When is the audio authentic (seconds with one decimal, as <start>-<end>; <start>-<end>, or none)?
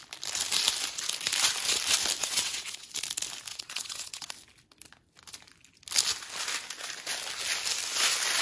0.0-2.2; 2.9-3.5; 4.3-8.4